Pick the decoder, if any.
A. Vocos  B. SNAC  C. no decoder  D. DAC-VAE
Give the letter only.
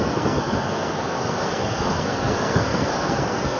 B